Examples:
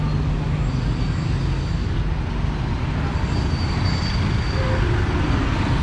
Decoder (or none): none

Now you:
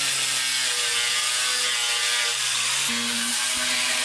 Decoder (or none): none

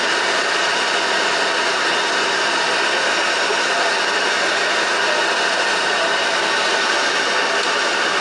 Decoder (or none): none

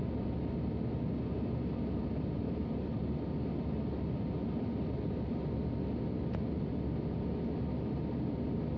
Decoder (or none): none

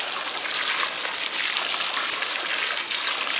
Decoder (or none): none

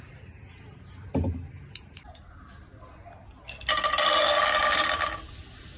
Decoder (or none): none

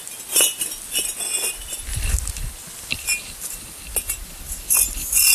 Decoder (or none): none